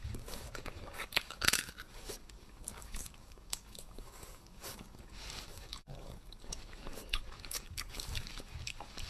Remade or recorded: remade